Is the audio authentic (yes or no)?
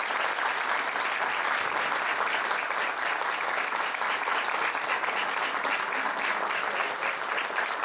yes